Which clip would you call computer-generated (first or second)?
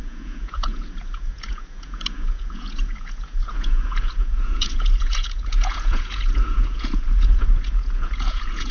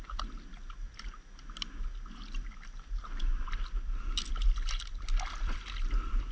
first